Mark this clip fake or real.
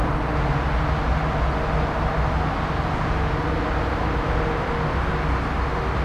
real